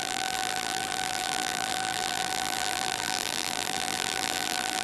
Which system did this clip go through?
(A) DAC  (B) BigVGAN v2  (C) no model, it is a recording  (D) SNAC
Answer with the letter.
B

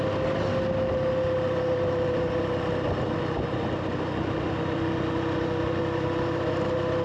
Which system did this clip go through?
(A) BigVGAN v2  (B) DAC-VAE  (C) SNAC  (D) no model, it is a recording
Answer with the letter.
D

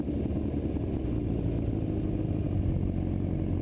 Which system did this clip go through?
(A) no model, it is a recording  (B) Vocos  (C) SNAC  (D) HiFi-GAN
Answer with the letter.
A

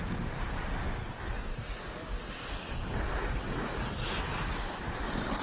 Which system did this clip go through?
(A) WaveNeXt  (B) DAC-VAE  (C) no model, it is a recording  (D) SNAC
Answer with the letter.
C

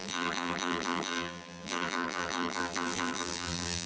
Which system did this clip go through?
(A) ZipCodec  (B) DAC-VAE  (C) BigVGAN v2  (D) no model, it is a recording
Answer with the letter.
C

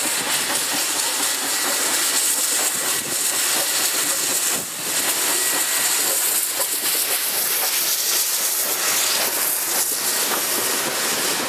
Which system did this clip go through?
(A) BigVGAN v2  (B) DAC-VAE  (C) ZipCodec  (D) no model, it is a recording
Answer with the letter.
D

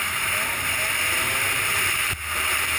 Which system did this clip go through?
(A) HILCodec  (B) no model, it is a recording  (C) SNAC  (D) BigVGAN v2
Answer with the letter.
D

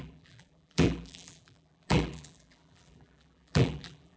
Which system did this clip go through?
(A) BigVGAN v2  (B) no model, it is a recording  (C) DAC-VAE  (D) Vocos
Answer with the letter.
A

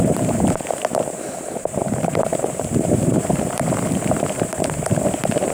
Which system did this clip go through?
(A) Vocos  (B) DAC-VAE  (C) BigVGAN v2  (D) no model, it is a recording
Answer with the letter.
C